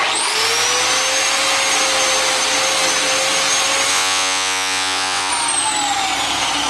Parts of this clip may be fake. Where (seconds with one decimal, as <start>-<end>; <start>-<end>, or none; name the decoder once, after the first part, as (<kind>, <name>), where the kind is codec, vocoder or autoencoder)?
3.9-5.3 (vocoder, Vocos)